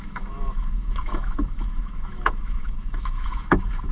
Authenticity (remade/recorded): remade